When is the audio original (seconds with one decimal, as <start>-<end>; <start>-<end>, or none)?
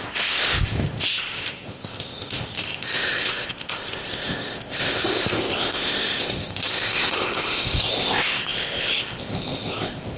none